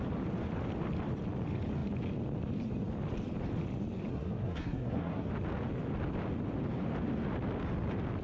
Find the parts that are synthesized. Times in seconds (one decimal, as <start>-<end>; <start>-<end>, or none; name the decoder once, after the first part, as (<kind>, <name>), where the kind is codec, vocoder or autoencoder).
4.1-5.3 (codec, SNAC)